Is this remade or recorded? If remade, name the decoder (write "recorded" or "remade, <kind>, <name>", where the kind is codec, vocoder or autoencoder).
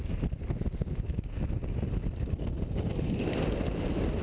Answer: recorded